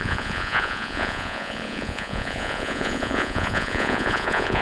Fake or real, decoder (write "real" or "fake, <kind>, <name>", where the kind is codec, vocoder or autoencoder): fake, vocoder, Vocos